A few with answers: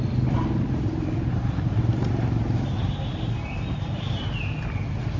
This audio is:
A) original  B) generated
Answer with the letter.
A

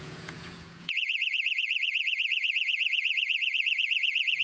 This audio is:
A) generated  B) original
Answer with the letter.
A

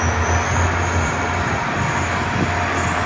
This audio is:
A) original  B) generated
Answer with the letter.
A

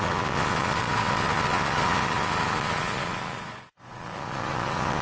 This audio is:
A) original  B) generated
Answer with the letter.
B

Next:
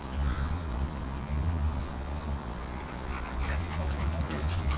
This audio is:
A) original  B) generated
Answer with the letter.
B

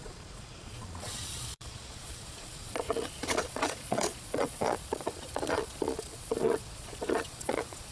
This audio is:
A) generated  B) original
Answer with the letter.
A